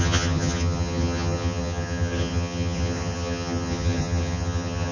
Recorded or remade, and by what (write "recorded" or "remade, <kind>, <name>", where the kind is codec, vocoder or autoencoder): remade, vocoder, HiFi-GAN